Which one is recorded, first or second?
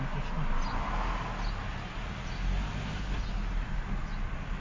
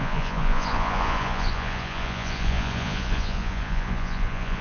first